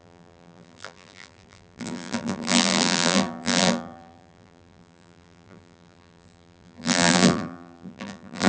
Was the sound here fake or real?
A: fake